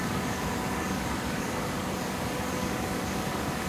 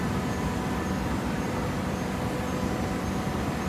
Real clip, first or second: second